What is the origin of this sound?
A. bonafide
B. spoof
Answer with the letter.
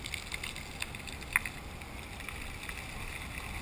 A